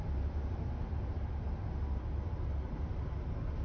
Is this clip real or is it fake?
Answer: real